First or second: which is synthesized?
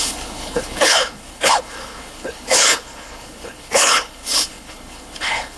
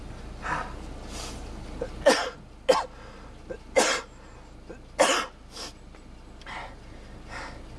first